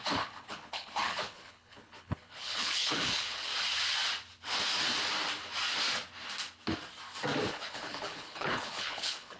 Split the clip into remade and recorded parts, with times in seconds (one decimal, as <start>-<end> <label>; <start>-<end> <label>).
0.0-3.5 remade; 3.5-7.5 recorded; 7.5-9.4 remade